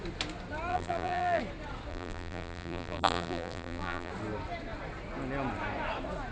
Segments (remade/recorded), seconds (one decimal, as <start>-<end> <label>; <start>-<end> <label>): 0.0-0.7 recorded; 0.7-1.4 remade; 1.4-1.9 recorded; 1.9-4.1 remade; 4.1-6.3 recorded